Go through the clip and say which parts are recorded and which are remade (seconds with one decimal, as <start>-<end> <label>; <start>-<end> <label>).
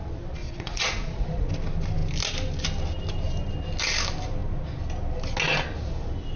0.0-0.4 recorded; 0.4-1.5 remade; 1.5-6.4 recorded